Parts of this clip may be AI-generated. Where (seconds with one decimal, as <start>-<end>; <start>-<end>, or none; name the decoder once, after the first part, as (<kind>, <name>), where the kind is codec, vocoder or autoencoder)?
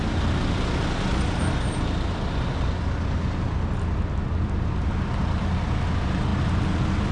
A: none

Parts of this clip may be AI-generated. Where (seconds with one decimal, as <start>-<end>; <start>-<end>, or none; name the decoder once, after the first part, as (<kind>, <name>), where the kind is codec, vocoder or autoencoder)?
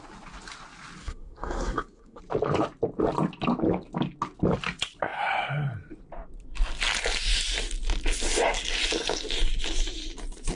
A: 1.0-2.2 (codec, SNAC)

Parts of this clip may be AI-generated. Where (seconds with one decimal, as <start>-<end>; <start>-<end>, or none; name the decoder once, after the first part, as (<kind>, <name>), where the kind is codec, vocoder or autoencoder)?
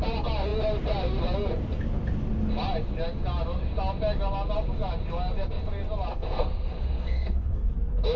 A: 6.1-7.7 (codec, SNAC)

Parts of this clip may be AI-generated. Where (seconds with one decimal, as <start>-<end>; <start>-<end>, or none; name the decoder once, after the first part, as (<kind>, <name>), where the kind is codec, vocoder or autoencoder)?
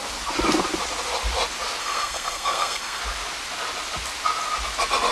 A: 1.8-3.0 (codec, SNAC)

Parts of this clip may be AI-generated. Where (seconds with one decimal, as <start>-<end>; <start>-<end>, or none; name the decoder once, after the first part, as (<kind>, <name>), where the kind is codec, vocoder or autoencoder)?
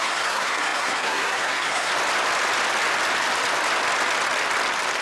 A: 0.0-1.9 (codec, SNAC)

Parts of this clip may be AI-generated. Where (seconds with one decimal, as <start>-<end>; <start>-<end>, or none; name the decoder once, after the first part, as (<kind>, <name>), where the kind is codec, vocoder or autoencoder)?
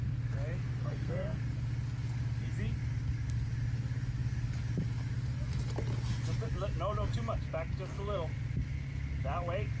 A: 0.8-1.4 (codec, SNAC)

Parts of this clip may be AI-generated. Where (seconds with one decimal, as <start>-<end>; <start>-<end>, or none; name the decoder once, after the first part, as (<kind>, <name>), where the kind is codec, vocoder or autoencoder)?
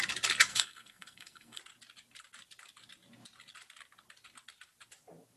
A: 0.5-1.6 (codec, SNAC)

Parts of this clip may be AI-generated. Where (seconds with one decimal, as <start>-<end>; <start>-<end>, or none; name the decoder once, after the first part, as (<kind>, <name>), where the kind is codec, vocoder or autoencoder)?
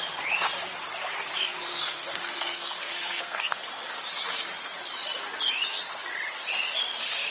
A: 1.7-3.6 (codec, SNAC)